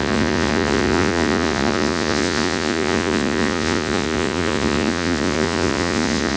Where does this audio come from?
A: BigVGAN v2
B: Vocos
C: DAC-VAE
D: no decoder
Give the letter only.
B